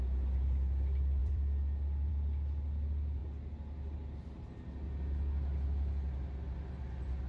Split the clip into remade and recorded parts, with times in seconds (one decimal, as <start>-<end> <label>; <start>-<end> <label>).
0.0-1.2 recorded; 1.2-2.1 remade; 2.1-7.3 recorded